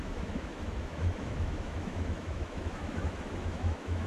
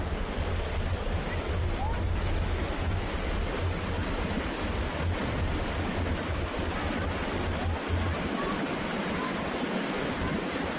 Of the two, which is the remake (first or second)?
first